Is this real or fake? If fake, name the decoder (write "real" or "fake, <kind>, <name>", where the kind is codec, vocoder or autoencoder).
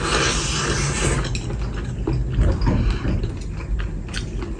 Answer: real